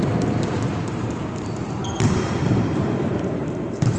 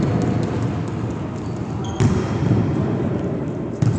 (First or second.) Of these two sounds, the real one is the second